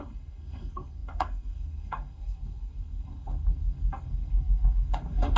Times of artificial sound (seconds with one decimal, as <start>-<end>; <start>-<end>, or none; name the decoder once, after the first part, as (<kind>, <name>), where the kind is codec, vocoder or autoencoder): 0.0-5.4 (codec, SNAC)